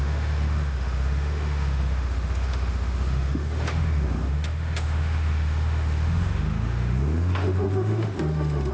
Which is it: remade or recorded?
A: remade